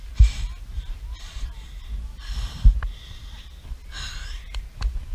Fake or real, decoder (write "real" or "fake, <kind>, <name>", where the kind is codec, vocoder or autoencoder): real